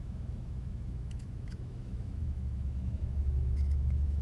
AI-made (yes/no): yes